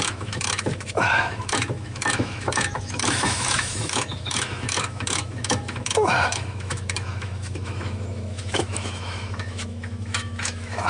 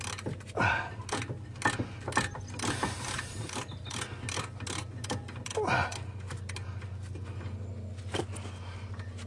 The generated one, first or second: first